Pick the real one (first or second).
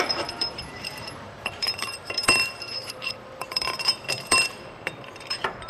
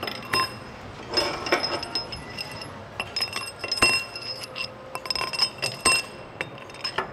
second